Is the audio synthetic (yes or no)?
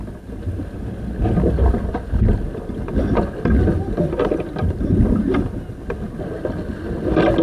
no